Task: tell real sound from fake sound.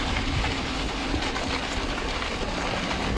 real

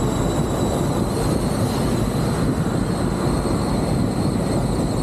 real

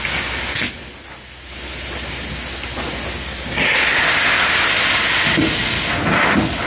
real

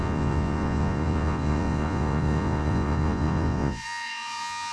fake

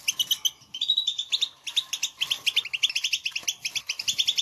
real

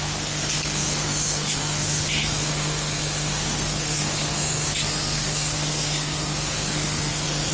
fake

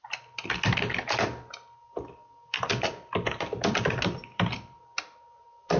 real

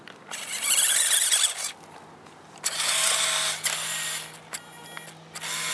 real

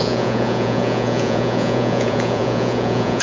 fake